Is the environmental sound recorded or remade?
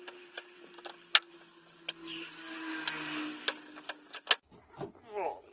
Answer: recorded